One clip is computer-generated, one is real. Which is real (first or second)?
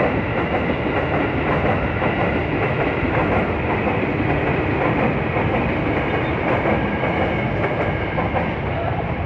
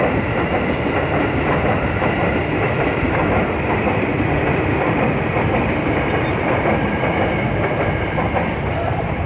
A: first